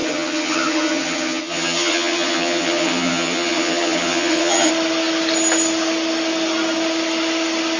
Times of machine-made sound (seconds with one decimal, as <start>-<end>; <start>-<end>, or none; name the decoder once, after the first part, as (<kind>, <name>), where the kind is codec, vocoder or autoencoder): 0.0-4.7 (vocoder, HiFi-GAN)